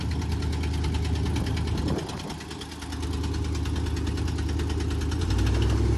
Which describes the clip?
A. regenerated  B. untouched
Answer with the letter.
B